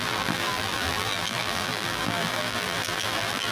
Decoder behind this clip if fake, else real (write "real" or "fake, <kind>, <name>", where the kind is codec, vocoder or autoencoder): fake, vocoder, BigVGAN v2